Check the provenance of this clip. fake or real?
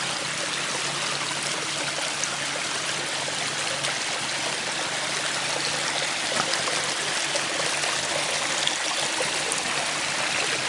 real